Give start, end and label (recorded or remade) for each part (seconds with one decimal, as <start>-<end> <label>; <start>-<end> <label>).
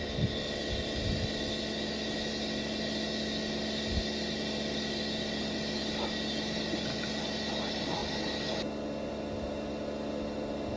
0.0-10.8 recorded